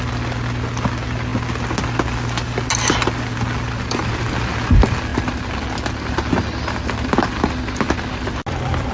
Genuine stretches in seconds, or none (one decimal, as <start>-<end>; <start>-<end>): 0.0-8.9